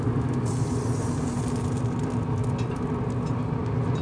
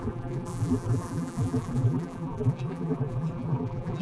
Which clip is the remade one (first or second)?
second